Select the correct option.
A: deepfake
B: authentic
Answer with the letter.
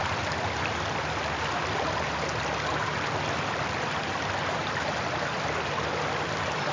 B